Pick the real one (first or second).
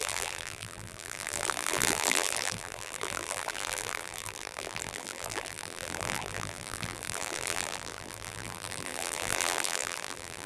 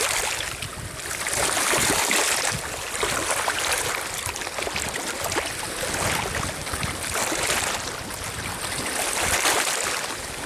second